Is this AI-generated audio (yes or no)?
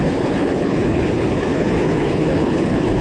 yes